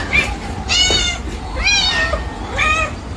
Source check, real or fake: real